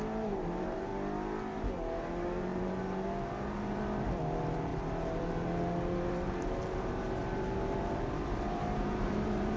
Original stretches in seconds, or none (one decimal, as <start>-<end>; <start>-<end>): 0.9-2.1